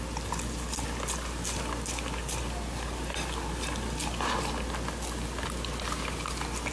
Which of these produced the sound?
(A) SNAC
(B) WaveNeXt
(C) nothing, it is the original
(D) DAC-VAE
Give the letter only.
C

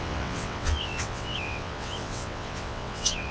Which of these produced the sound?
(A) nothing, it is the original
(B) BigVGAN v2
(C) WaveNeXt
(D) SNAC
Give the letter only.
C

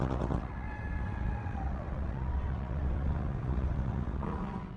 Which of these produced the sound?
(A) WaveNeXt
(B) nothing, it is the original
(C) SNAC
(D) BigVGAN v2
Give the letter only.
A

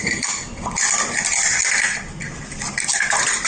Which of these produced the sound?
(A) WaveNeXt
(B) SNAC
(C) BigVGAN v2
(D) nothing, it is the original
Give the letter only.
D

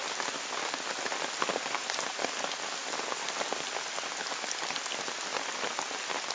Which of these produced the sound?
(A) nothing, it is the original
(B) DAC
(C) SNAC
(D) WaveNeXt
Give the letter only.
A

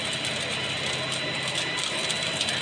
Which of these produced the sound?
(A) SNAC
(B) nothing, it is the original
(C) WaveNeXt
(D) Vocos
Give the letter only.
B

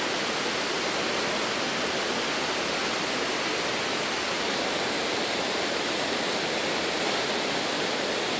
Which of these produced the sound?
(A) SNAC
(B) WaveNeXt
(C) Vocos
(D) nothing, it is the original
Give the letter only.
D